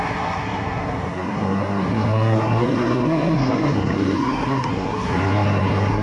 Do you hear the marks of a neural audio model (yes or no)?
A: yes